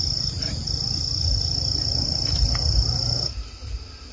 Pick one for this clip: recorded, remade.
recorded